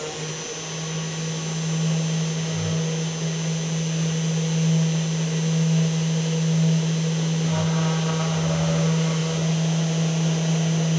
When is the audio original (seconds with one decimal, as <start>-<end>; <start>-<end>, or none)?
0.0-11.0